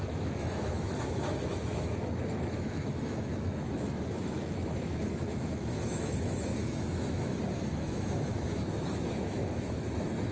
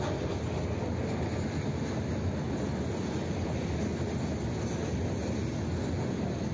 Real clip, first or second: second